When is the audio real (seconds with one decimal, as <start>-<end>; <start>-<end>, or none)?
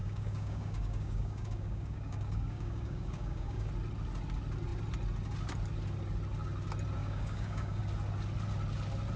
3.7-7.0; 7.8-9.2